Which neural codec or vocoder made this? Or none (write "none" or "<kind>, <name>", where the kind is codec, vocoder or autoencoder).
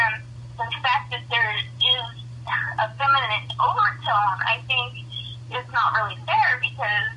none